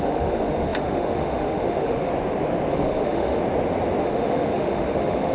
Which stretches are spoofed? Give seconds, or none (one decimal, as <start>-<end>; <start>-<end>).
0.0-2.1; 2.7-3.4; 4.0-5.3